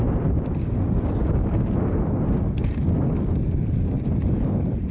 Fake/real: real